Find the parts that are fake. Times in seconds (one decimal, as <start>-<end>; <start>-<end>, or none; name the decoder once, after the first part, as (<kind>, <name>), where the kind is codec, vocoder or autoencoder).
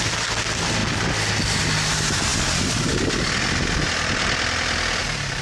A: none